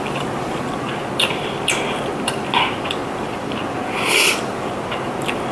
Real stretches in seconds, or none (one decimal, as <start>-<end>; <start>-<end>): 0.0-5.5